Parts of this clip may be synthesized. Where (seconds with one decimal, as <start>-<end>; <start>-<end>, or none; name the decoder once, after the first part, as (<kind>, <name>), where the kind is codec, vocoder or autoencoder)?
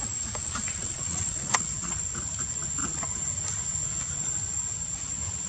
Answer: 0.4-2.0 (vocoder, Vocos)